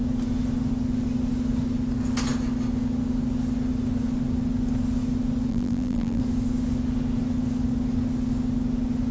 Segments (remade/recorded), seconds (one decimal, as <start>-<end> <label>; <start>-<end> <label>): 0.0-5.5 recorded; 5.5-6.2 remade; 6.2-9.1 recorded